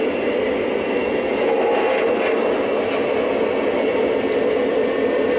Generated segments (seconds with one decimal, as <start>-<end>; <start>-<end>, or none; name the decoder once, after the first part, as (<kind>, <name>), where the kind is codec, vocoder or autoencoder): none